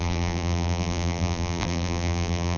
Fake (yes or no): yes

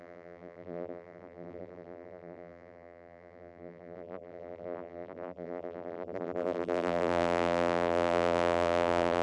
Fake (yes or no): yes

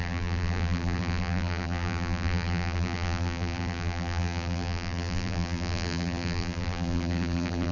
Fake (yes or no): yes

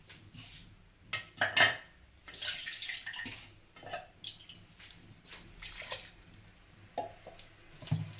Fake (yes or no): no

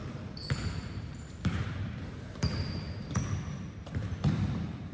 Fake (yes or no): yes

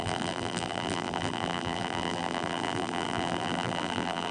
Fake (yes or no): yes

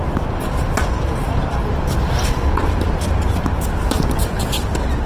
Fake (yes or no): no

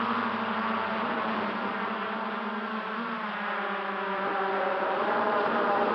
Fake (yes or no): yes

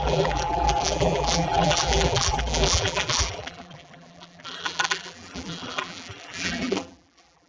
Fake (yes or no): yes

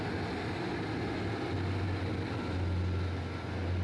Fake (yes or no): no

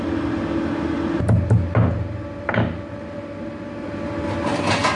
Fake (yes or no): no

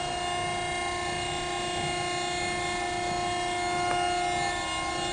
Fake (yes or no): no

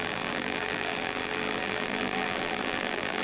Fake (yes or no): yes